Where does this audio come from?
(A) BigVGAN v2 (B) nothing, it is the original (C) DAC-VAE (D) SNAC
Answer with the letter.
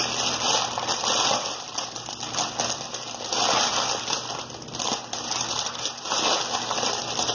B